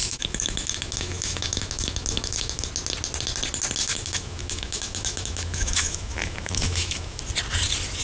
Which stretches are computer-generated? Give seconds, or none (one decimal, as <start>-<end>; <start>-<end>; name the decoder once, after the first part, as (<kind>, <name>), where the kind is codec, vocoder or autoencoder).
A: 0.0-2.7 (autoencoder, DAC-VAE); 3.8-7.2